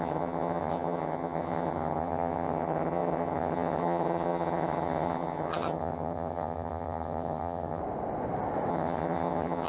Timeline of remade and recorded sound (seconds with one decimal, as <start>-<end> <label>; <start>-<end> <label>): 0.0-7.8 remade; 7.8-8.7 recorded; 8.7-9.7 remade